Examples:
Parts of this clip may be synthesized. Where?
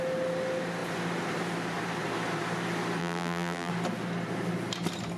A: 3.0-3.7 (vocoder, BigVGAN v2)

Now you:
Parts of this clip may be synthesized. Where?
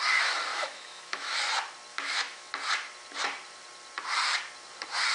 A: 0.5-1.4 (autoencoder, DAC-VAE); 1.9-2.5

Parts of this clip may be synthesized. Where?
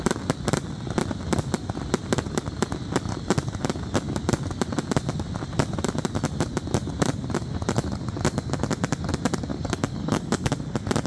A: 9.5-10.5 (codec, DAC)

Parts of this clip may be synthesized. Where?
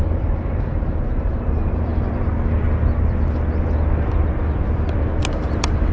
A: 0.0-1.9 (vocoder, BigVGAN v2); 5.3-5.9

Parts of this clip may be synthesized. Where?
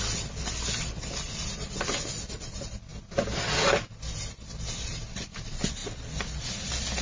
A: none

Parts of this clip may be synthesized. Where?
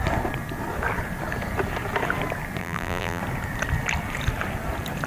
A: 2.6-3.2 (vocoder, BigVGAN v2)